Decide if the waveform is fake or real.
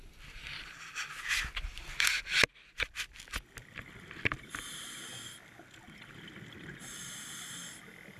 real